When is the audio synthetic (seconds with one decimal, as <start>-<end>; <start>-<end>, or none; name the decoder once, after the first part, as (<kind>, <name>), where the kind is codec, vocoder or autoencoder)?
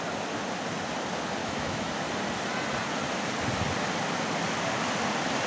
1.4-1.9 (autoencoder, DAC-VAE)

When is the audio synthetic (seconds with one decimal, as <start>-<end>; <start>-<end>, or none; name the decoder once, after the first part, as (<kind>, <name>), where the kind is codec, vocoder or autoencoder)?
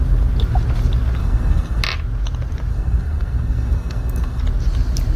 1.2-1.8 (codec, SNAC); 2.7-4.4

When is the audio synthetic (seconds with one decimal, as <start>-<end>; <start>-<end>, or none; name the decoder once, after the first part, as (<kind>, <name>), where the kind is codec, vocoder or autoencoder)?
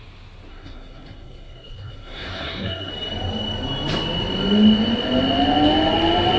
0.5-2.9 (codec, SNAC)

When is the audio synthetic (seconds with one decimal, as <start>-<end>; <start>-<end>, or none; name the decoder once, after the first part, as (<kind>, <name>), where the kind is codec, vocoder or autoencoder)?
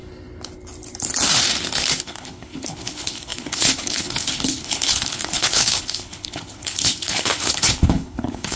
2.0-8.6 (codec, HILCodec)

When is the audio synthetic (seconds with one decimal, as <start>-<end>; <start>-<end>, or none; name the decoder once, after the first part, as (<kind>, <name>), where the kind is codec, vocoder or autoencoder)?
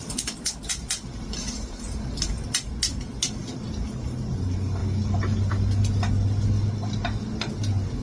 none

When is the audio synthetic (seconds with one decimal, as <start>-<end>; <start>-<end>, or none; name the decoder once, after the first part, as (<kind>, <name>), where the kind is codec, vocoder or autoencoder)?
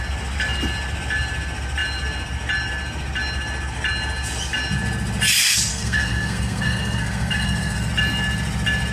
5.7-7.9 (codec, SNAC)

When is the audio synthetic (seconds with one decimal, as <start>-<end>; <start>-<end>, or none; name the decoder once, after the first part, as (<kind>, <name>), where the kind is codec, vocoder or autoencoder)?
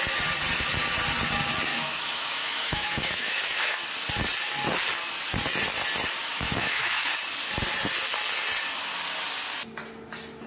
1.7-3.9 (autoencoder, DAC-VAE); 6.3-7.2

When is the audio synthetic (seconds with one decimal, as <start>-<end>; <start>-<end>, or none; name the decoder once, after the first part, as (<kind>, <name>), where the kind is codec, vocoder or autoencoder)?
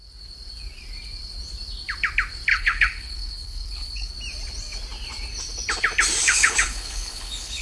2.5-4.1 (codec, HILCodec); 6.2-7.6